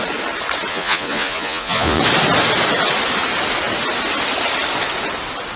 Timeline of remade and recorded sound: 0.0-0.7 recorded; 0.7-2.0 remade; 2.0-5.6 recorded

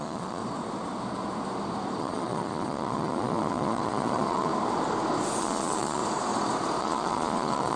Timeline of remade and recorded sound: 0.0-0.4 remade; 0.4-2.0 recorded; 2.0-4.5 remade; 4.5-5.4 recorded; 5.4-6.0 remade; 6.0-6.8 recorded; 6.8-7.8 remade